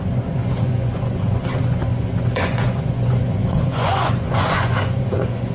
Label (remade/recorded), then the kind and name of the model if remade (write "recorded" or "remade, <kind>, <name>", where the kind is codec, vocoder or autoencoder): remade, vocoder, Vocos